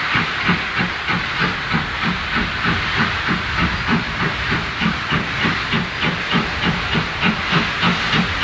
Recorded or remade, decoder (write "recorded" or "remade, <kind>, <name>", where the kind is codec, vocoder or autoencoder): recorded